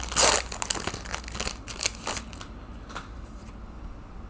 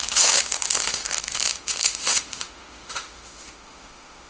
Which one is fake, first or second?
second